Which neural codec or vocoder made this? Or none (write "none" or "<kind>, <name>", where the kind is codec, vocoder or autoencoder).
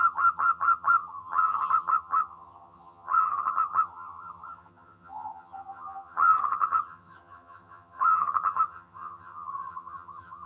vocoder, HiFi-GAN